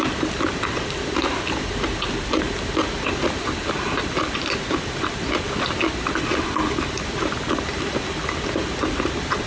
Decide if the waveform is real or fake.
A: real